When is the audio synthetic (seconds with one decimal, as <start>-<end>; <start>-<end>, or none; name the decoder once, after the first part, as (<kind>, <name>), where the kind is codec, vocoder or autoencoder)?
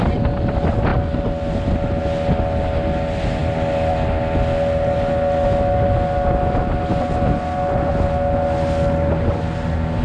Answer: none